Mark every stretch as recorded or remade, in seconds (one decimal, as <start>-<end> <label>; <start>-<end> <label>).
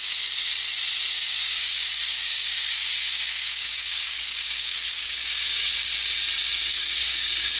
0.0-1.1 recorded; 1.1-5.7 remade; 5.7-6.7 recorded; 6.7-7.6 remade